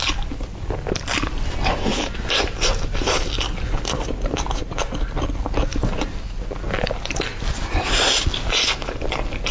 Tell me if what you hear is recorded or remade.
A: recorded